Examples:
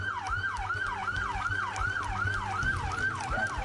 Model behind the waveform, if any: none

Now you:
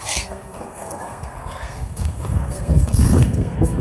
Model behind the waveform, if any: codec, SNAC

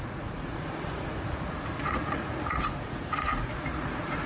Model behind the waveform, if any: vocoder, Vocos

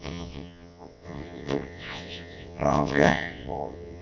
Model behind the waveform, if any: vocoder, WaveNeXt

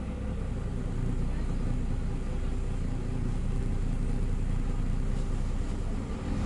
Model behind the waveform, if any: none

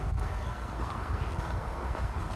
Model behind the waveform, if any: codec, SNAC